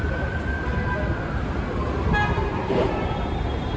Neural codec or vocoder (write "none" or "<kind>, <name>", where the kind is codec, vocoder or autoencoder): none